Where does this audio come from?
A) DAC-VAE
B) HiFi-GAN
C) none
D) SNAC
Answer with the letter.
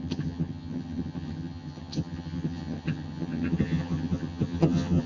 B